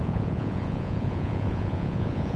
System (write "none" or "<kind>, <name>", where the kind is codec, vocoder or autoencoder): vocoder, Vocos